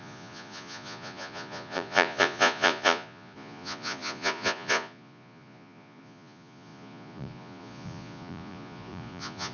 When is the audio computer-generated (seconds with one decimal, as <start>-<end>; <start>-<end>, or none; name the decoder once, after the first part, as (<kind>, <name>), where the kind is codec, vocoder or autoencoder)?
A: 0.0-9.5 (vocoder, Vocos)